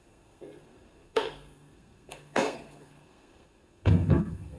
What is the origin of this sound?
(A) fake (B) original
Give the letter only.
A